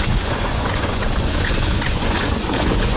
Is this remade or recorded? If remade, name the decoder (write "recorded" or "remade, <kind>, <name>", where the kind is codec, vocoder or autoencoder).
remade, vocoder, Vocos